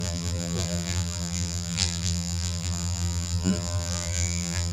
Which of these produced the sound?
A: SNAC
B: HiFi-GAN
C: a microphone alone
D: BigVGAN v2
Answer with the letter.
D